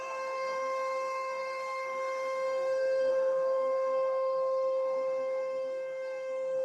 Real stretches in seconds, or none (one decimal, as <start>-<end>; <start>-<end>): none